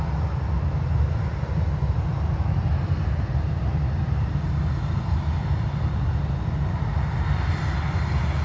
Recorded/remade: recorded